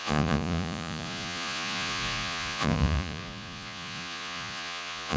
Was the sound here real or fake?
fake